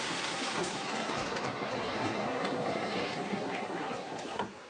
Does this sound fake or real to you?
fake